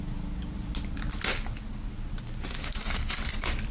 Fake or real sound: real